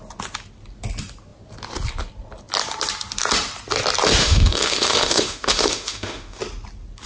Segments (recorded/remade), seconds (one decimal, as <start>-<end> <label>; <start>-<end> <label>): 0.0-4.2 recorded; 4.2-6.4 remade; 6.4-7.1 recorded